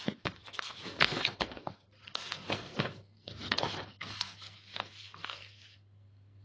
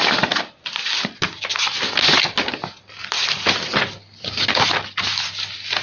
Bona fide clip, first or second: second